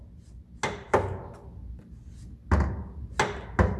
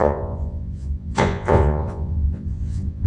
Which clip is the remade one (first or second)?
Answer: second